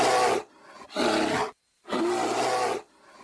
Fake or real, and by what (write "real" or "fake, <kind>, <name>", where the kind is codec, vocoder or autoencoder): real